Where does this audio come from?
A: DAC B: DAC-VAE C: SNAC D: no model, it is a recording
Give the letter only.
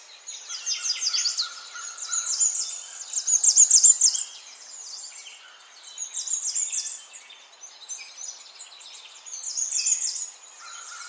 D